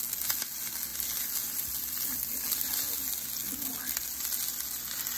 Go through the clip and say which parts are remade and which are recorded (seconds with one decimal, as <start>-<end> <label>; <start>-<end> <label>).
0.0-5.2 recorded